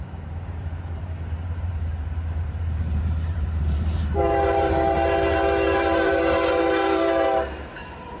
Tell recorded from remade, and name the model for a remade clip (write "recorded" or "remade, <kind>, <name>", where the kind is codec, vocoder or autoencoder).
remade, vocoder, BigVGAN v2